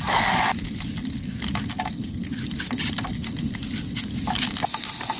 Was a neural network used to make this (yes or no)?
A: no